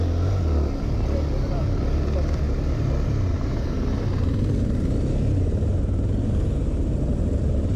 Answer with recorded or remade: recorded